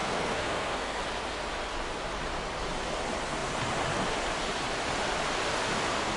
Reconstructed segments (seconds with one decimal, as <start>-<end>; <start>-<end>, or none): 0.0-1.0